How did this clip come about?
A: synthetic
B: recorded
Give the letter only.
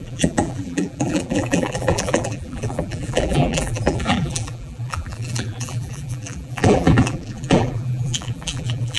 A